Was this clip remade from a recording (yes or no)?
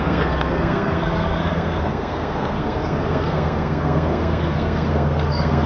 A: yes